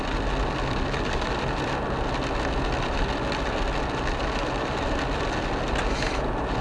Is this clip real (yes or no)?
yes